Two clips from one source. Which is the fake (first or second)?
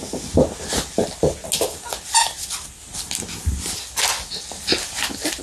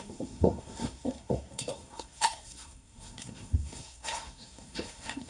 second